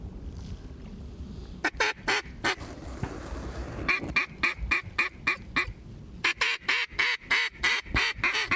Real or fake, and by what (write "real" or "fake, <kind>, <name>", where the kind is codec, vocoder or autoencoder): real